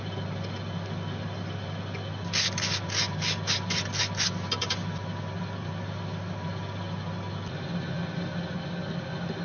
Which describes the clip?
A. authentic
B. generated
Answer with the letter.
A